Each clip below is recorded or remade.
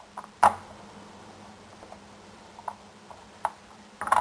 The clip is remade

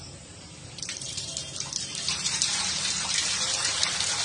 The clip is remade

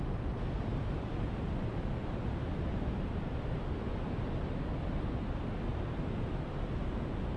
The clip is recorded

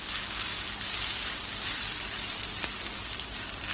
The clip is recorded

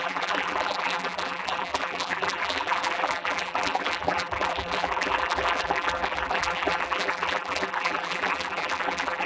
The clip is remade